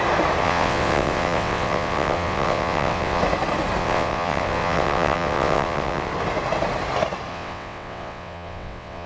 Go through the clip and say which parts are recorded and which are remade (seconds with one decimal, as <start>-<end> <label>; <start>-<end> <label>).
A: 0.0-0.4 recorded; 0.4-3.2 remade; 3.2-3.8 recorded; 3.8-6.1 remade; 6.1-7.3 recorded; 7.3-9.1 remade